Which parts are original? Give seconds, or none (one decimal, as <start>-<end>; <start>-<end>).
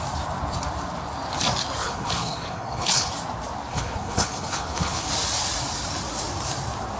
0.0-1.8; 3.1-3.7; 5.1-7.0